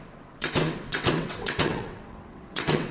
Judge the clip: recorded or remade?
remade